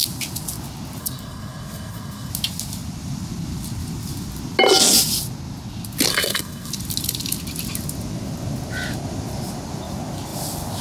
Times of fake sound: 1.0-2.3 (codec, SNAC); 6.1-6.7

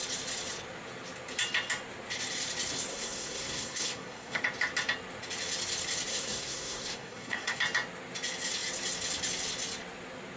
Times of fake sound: 2.9-4.4 (codec, SNAC); 6.1-7.6

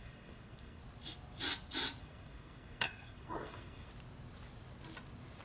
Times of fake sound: 0.0-0.8 (codec, SNAC); 2.0-3.9

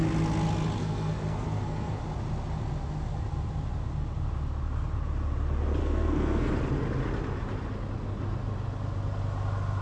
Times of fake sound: 0.8-2.0 (codec, SNAC); 5.8-6.5